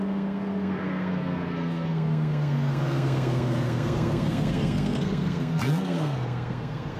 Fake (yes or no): yes